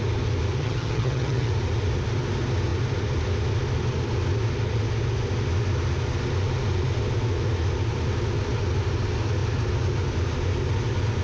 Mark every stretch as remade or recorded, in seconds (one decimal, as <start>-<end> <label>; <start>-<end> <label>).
0.0-0.6 recorded; 0.6-1.5 remade; 1.5-11.2 recorded